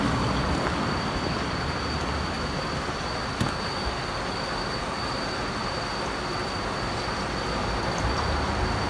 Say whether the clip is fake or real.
real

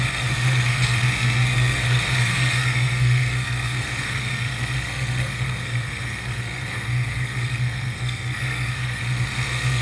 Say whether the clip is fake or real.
fake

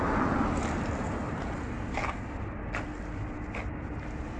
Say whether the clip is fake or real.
real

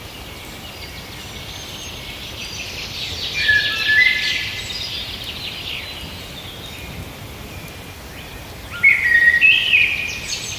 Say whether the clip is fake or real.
real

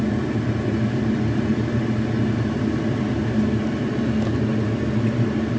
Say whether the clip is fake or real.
real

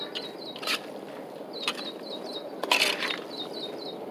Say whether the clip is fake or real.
real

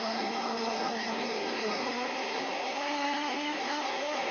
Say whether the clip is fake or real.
fake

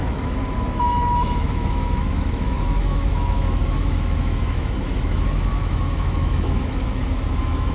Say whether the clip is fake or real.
fake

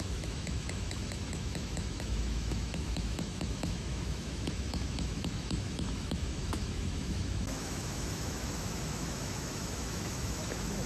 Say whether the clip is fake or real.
fake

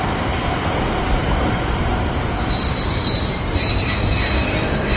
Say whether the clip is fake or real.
fake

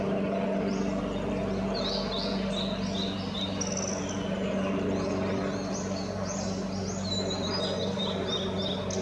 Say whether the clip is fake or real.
real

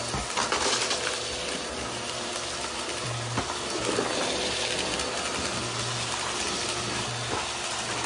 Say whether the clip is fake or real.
real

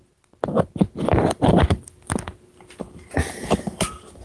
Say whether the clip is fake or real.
real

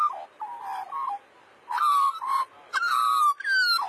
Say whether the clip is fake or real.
real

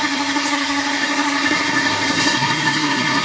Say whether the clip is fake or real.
fake